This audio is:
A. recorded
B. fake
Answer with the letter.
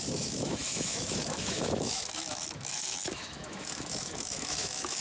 B